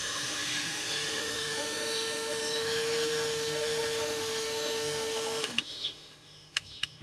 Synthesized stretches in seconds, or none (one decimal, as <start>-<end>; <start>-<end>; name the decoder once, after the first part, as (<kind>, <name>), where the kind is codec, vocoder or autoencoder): 0.0-7.0 (autoencoder, DAC-VAE)